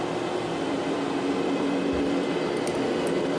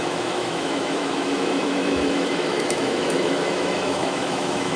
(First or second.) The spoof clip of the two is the second